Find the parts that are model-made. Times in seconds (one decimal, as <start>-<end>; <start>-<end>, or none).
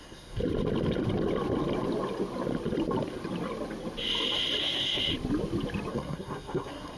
0.0-0.4; 4.6-5.1; 5.9-7.0